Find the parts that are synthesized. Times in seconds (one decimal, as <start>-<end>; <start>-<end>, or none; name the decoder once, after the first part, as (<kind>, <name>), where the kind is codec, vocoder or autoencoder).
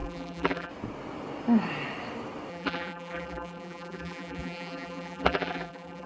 0.0-0.7 (vocoder, BigVGAN v2); 2.5-6.1